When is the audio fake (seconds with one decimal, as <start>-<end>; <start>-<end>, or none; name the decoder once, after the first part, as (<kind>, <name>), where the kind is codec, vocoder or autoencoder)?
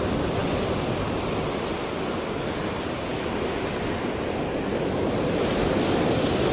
none